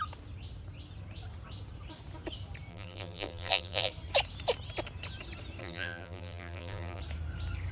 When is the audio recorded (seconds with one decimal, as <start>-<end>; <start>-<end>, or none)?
0.0-2.7; 3.9-5.6; 7.0-7.7